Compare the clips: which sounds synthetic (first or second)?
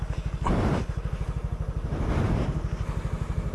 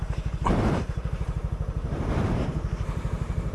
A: second